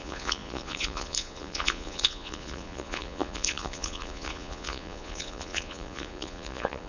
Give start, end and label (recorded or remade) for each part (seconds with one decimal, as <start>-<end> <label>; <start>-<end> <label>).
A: 0.0-6.9 remade